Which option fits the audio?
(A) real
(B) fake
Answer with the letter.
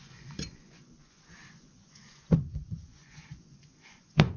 B